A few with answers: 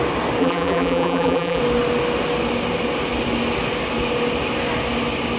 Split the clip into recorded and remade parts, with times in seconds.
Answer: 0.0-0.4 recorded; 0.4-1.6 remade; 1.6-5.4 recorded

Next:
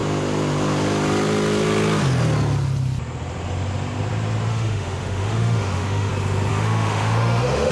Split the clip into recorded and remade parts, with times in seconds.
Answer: 0.0-4.5 recorded; 4.5-6.1 remade; 6.1-6.5 recorded; 6.5-7.7 remade

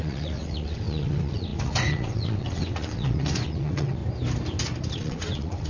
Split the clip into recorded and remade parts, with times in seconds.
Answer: 0.0-4.0 remade; 4.0-4.9 recorded; 4.9-5.7 remade

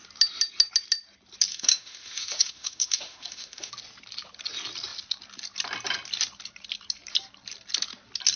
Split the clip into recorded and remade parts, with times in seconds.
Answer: 0.0-1.5 recorded; 1.5-3.7 remade; 3.7-8.4 recorded